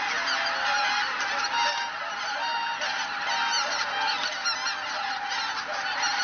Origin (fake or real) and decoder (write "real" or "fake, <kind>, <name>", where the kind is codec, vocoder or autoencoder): real